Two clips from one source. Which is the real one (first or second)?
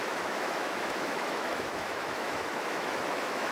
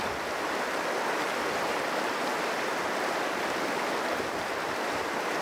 second